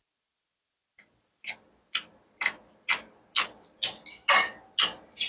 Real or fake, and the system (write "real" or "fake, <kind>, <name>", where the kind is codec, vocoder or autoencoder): real